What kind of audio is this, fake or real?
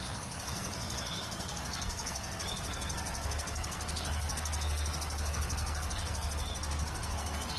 fake